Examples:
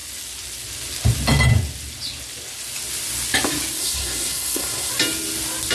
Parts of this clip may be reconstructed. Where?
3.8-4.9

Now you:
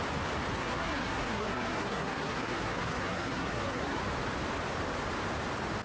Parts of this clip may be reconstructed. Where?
0.5-4.0

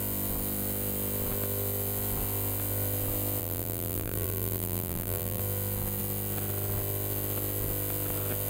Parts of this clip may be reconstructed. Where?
3.4-5.4

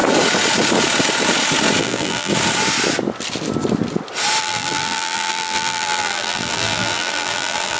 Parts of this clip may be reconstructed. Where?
1.8-2.3; 4.4-7.8

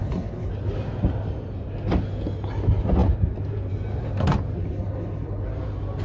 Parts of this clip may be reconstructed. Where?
0.0-0.5; 4.6-5.5

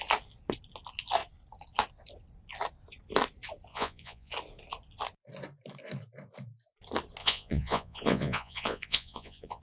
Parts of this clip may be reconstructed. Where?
3.7-4.3; 7.2-9.6

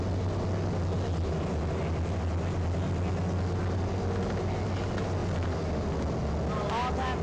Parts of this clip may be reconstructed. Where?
none